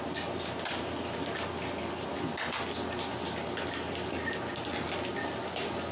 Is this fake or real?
real